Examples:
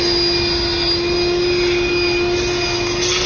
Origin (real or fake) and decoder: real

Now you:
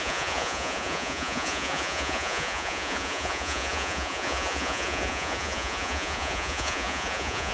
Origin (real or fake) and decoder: fake, vocoder, Vocos